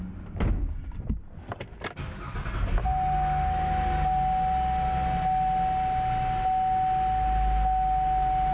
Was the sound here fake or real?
real